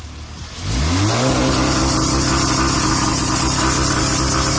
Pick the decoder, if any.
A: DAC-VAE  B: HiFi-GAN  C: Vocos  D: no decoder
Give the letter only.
D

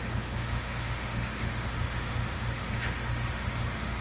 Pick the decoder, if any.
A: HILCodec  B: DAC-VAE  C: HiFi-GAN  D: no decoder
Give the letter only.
B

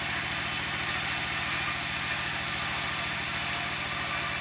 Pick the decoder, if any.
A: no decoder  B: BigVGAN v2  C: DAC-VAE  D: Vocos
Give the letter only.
A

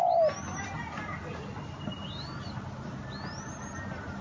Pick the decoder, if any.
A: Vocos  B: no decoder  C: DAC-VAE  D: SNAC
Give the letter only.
B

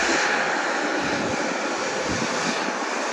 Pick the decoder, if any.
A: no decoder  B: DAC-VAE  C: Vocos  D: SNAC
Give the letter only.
A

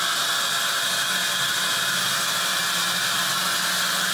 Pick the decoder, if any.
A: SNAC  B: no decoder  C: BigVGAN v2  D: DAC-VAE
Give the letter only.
B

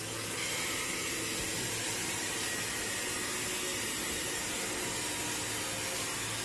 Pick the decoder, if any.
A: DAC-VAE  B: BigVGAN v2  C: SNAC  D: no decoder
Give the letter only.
D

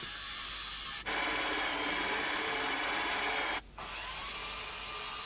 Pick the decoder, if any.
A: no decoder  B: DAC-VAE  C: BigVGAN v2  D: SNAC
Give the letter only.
A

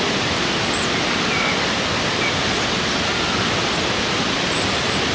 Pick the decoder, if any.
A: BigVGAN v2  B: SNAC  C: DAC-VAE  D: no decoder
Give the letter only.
D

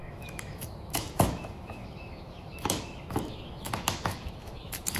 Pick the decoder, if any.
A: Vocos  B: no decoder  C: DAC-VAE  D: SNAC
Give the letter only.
C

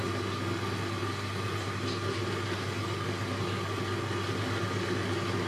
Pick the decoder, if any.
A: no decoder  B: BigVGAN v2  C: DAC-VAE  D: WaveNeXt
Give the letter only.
A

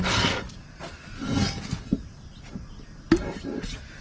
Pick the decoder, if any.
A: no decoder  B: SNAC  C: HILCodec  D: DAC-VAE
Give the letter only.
A